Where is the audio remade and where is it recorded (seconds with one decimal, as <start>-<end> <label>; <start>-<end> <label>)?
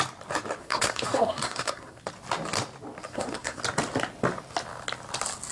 0.0-0.6 recorded; 0.6-2.0 remade; 2.0-3.1 recorded; 3.1-3.6 remade; 3.6-5.5 recorded